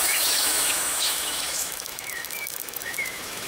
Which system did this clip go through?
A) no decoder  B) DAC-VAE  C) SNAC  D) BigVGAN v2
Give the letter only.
B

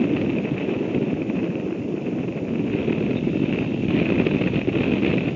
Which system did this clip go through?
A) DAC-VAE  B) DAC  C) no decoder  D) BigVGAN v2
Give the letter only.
C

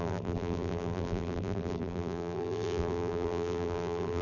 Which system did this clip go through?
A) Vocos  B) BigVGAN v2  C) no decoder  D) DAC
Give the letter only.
B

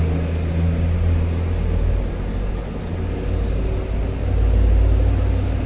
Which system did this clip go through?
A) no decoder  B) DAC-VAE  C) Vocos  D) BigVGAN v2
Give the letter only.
A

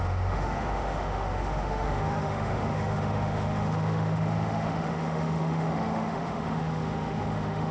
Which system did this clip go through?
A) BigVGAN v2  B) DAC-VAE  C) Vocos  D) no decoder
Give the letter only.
B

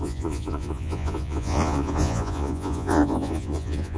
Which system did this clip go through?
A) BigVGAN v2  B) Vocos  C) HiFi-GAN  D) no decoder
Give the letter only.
B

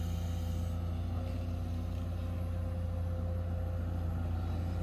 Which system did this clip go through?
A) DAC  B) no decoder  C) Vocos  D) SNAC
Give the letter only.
B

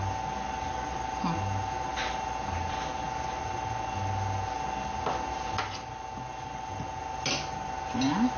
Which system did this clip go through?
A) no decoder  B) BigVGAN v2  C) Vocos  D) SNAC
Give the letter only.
A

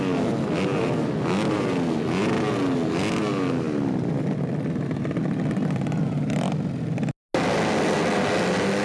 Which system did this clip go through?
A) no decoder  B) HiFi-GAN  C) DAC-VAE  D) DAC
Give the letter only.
A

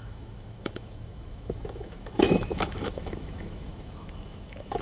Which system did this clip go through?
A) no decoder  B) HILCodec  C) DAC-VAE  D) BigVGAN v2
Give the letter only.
C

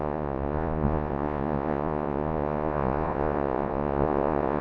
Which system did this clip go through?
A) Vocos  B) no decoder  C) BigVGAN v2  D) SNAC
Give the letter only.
A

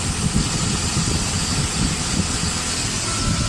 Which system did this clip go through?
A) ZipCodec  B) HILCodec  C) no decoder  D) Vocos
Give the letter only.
C